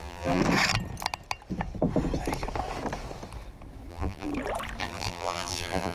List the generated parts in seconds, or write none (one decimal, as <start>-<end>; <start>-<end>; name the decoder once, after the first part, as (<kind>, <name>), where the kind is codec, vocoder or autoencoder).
0.0-0.4 (vocoder, BigVGAN v2); 3.9-4.3; 4.8-5.9